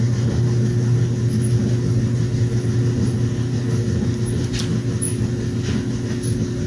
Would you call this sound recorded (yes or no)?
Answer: yes